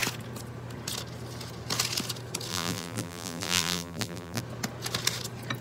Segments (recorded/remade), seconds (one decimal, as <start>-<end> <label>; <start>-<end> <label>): 0.0-2.5 recorded; 2.5-4.4 remade; 4.4-5.6 recorded